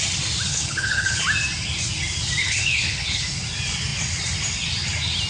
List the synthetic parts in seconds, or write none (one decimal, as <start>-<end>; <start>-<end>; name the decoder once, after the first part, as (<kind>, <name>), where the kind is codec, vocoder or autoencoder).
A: 0.5-1.2 (codec, HILCodec); 2.4-3.2

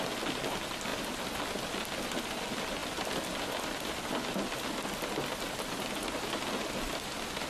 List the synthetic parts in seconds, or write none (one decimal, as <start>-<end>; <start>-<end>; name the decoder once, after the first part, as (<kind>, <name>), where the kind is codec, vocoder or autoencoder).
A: none

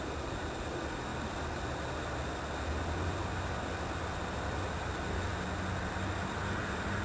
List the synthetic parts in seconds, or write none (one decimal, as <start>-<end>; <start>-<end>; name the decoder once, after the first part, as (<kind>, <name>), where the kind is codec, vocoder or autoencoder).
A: none

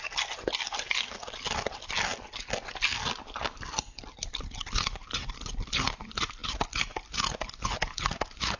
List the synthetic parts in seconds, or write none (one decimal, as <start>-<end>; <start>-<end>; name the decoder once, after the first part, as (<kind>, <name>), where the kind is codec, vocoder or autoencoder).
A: none

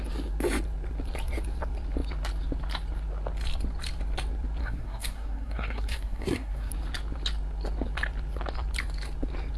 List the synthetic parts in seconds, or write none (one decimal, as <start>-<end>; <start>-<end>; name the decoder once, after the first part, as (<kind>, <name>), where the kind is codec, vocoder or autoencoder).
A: 4.6-6.7 (codec, SNAC)